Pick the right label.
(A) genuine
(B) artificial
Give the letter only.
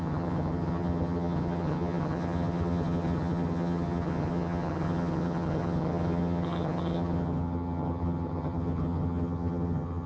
B